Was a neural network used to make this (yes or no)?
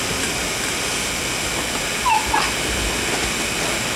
no